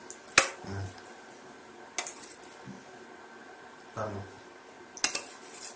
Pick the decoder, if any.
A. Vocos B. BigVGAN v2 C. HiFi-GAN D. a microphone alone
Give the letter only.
D